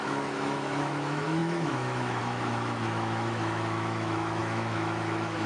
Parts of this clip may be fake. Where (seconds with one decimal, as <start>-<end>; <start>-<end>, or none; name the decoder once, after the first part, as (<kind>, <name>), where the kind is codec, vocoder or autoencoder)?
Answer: 0.0-5.5 (autoencoder, DAC-VAE)